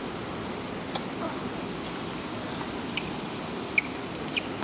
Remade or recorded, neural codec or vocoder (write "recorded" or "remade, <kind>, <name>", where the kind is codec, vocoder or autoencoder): recorded